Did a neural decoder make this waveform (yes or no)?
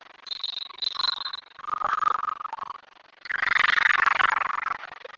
no